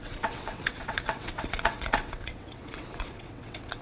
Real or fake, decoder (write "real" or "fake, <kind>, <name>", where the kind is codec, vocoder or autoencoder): fake, vocoder, WaveNeXt